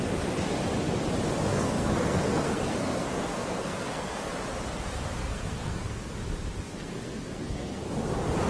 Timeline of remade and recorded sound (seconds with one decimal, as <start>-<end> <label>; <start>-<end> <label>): 0.0-1.5 recorded; 1.5-4.3 remade; 4.3-5.2 recorded; 5.2-6.1 remade; 6.1-6.7 recorded; 6.7-7.8 remade; 7.8-8.5 recorded